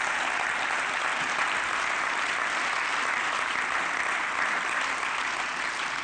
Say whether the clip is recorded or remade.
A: recorded